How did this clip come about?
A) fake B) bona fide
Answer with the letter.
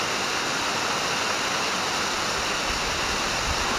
B